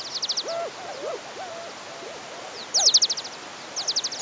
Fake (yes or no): no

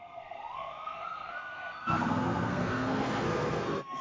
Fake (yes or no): yes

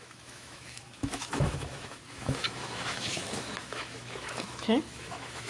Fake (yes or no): yes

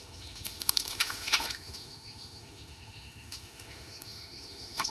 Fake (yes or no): yes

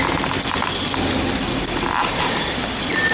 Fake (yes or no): no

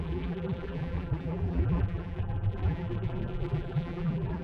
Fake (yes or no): yes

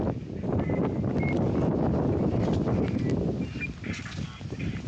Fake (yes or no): no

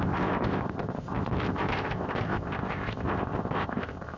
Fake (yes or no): yes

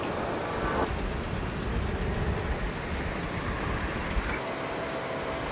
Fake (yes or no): no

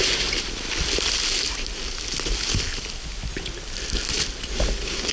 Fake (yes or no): no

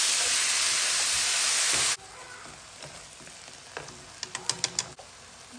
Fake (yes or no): no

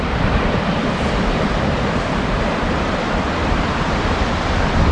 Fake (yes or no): yes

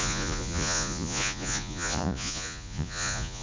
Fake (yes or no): yes